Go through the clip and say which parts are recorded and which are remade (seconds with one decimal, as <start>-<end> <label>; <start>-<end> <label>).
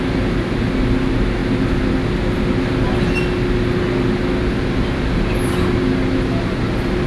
0.0-7.1 recorded